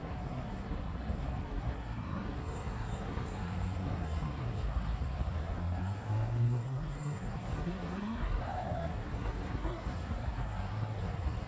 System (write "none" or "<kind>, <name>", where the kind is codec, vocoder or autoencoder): codec, SNAC